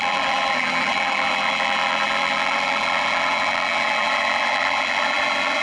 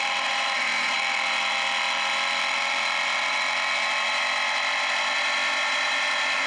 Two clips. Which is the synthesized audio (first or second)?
first